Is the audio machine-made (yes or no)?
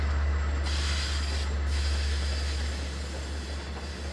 no